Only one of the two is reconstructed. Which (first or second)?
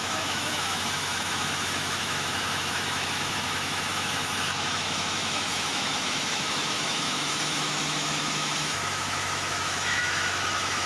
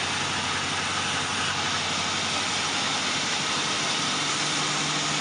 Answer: first